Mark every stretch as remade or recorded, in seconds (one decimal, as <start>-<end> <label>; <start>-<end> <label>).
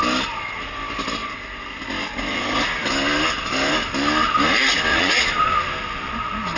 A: 0.0-4.9 recorded; 4.9-5.5 remade; 5.5-6.6 recorded